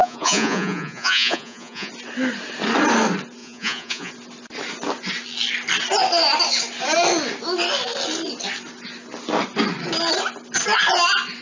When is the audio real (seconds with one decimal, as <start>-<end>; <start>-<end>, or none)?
1.9-3.4; 4.1-11.4